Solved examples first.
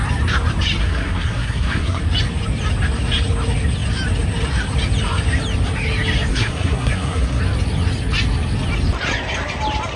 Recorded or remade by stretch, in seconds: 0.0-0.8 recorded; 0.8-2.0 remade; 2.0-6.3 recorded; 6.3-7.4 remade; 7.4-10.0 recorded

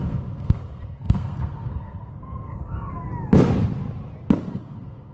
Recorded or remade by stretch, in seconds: 0.0-2.9 remade; 2.9-4.5 recorded; 4.5-5.1 remade

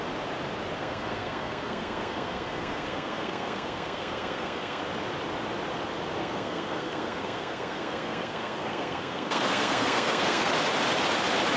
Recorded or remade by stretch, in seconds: 0.0-0.8 recorded; 0.8-4.8 remade; 4.8-6.2 recorded; 6.2-10.5 remade; 10.5-11.6 recorded

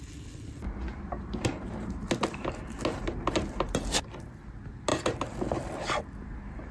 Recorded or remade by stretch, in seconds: 0.0-6.7 recorded

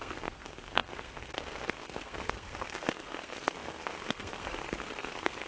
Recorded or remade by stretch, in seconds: 0.0-5.5 remade

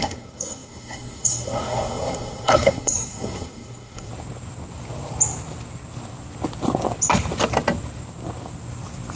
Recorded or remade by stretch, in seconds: 0.0-4.1 remade; 4.1-9.2 recorded

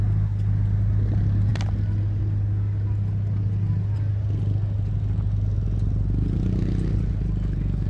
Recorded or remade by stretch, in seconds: 0.0-7.9 recorded